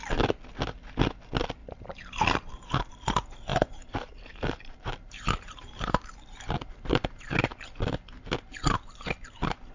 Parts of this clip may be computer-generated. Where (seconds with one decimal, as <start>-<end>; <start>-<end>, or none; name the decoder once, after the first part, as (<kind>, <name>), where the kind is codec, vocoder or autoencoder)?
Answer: 1.6-2.9 (vocoder, BigVGAN v2); 3.5-7.6